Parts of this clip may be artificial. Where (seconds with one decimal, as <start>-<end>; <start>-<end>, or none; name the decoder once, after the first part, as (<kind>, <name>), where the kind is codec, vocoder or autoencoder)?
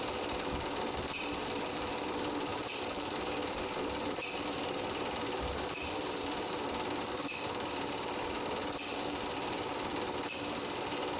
2.5-6.2 (vocoder, BigVGAN v2)